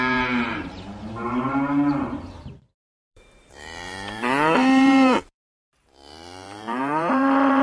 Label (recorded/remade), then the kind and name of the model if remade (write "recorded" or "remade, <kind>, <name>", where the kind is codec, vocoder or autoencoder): remade, vocoder, BigVGAN v2